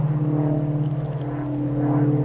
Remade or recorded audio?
recorded